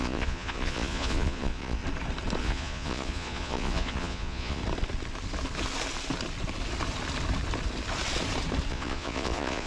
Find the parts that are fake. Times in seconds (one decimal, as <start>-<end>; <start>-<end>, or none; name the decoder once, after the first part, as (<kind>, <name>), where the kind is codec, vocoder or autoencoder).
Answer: 0.0-1.8 (vocoder, Vocos); 2.4-4.6; 8.7-9.7